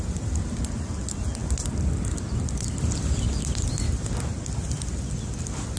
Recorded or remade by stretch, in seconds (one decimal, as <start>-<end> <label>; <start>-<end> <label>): 0.0-5.8 recorded

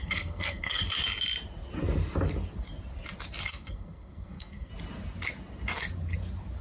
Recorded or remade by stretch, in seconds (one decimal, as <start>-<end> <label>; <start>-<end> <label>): 0.0-0.8 remade; 0.8-3.5 recorded; 3.5-4.7 remade; 4.7-6.6 recorded

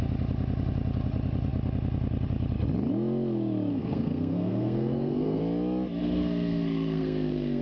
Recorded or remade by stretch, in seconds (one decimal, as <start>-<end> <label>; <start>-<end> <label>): 0.0-3.7 recorded; 3.7-5.4 remade; 5.4-6.0 recorded; 6.0-7.6 remade

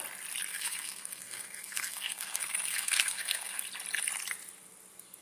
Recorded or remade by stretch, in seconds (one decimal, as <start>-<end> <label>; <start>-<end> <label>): 0.0-0.5 recorded; 0.5-3.6 remade; 3.6-5.2 recorded

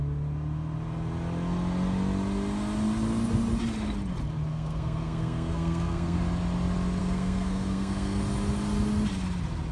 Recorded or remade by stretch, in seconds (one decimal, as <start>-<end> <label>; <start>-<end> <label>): 0.0-4.5 recorded; 4.5-6.2 remade; 6.2-7.0 recorded; 7.0-8.2 remade; 8.2-9.7 recorded

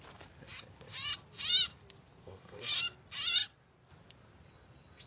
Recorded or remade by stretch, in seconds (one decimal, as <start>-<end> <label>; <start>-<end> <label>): 0.0-2.2 recorded; 2.2-2.7 remade; 2.7-5.1 recorded

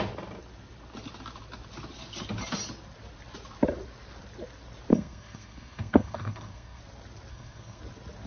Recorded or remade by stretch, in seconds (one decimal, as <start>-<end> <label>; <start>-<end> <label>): 0.0-4.9 recorded; 4.9-6.8 remade; 6.8-7.3 recorded; 7.3-7.8 remade; 7.8-8.3 recorded